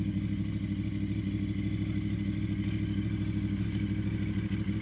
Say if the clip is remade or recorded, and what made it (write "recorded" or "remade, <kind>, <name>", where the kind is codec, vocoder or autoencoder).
recorded